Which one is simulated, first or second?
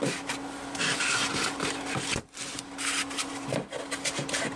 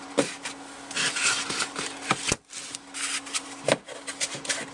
first